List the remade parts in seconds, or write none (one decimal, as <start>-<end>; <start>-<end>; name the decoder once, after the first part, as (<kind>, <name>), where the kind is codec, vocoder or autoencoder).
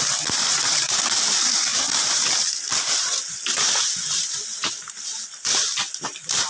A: none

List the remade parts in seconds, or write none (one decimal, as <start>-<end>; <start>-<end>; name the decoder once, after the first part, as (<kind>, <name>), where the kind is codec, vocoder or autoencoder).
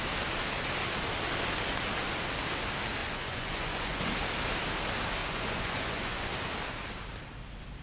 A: 3.0-4.1 (vocoder, Vocos); 5.2-6.3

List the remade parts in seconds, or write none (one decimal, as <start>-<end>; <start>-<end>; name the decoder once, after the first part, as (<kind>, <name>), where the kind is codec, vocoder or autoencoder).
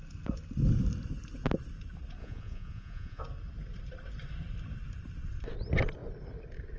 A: 2.2-3.2 (vocoder, Vocos)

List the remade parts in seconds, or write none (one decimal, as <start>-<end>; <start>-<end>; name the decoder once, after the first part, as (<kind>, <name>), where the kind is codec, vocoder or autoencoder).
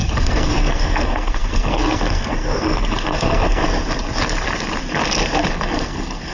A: 0.0-3.6 (codec, SNAC); 5.5-6.3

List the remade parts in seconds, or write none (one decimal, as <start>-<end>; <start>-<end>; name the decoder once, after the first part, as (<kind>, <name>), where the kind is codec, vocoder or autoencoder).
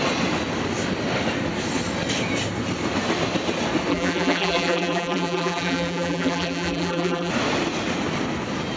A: 3.9-7.3 (vocoder, BigVGAN v2)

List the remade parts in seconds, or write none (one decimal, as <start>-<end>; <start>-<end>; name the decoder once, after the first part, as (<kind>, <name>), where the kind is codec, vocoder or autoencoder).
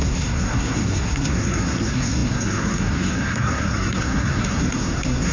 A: 0.0-5.3 (codec, SNAC)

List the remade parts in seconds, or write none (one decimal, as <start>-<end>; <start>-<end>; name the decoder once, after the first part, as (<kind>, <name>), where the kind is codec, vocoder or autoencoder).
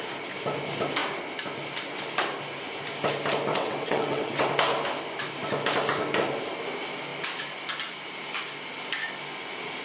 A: 3.5-4.5 (vocoder, WaveNeXt)